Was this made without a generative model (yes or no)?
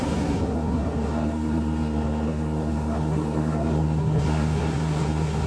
no